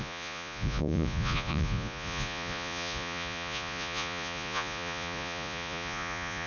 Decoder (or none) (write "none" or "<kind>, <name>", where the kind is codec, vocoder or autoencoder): vocoder, Vocos